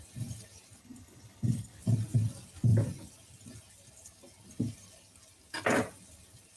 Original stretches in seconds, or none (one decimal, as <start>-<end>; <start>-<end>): 0.0-0.8; 1.8-6.6